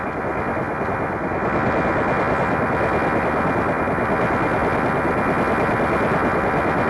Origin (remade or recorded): recorded